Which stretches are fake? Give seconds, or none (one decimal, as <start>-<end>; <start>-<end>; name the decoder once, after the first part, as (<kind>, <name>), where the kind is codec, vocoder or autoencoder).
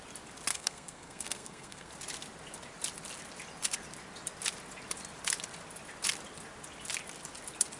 0.5-1.9 (codec, SNAC)